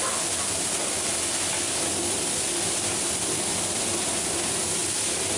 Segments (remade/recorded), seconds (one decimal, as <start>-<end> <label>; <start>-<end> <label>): 0.0-5.4 recorded